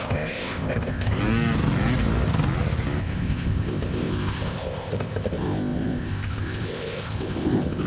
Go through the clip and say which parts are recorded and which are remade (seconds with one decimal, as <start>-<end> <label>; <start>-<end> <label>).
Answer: 0.0-1.2 remade; 1.2-3.0 recorded; 3.0-7.9 remade